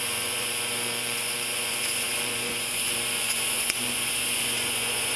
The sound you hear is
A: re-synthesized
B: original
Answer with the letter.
A